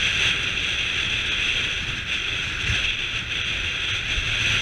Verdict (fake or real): real